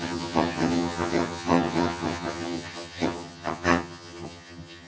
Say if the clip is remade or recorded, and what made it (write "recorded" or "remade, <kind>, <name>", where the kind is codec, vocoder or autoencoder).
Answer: remade, vocoder, HiFi-GAN